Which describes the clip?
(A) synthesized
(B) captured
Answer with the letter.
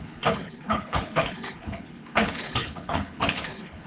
A